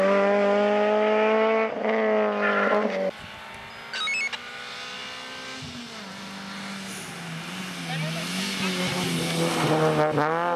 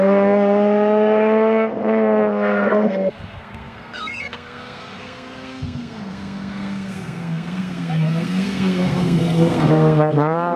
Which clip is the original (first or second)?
first